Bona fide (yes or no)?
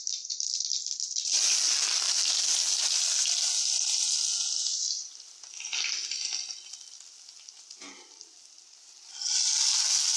yes